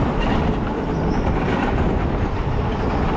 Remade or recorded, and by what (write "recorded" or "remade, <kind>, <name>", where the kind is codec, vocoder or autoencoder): recorded